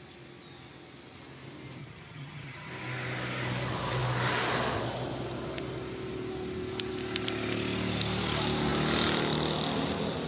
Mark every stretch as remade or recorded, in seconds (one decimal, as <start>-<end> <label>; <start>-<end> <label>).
0.0-1.8 recorded; 1.8-2.7 remade; 2.7-10.3 recorded